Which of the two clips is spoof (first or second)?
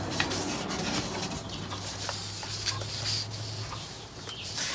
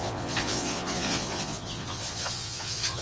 second